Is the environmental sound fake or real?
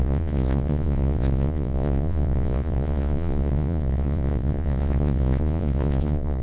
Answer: fake